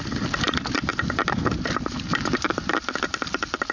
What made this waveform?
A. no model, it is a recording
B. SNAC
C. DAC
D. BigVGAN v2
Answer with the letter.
A